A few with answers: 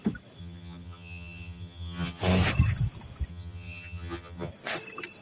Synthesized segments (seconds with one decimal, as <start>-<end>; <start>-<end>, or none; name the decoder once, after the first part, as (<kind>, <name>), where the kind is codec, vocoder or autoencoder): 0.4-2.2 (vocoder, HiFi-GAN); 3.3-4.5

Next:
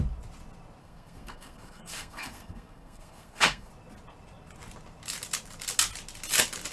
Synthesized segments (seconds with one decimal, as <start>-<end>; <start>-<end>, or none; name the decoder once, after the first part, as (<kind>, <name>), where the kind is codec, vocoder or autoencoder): 0.8-3.7 (codec, SNAC)

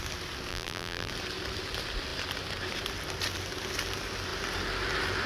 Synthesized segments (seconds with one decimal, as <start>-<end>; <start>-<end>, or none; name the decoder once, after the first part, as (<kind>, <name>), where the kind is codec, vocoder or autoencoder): 0.5-1.1 (vocoder, BigVGAN v2)

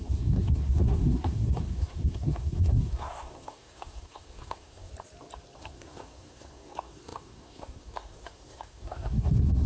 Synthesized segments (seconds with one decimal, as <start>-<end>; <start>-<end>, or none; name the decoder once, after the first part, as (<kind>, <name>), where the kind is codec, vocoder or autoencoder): 0.0-4.9 (codec, SNAC); 5.6-9.7

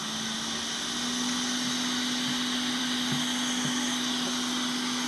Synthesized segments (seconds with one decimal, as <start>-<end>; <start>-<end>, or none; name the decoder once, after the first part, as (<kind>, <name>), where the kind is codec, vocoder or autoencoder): none

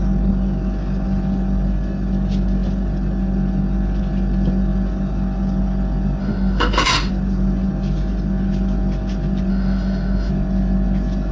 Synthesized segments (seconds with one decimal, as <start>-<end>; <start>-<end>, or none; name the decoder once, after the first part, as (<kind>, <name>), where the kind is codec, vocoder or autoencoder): 6.2-7.1 (autoencoder, DAC-VAE); 9.5-10.3

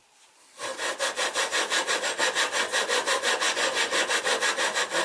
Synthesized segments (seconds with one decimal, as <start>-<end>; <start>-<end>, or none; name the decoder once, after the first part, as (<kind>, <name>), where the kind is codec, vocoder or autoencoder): 2.7-4.2 (vocoder, Vocos)